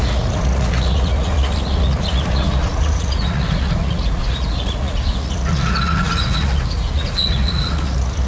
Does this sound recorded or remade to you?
remade